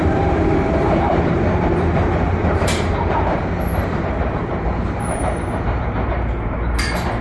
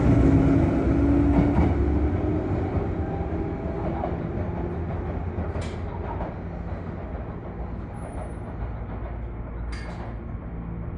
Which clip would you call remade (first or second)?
first